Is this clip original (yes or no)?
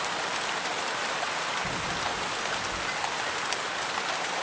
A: yes